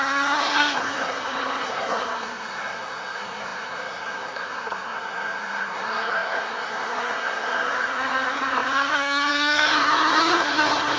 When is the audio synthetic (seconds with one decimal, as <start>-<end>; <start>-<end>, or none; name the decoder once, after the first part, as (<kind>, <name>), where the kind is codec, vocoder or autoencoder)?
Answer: 0.0-11.0 (codec, SNAC)